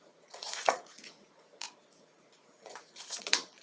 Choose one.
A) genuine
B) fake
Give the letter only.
B